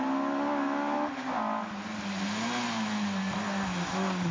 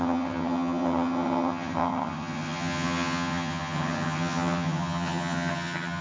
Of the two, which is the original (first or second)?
first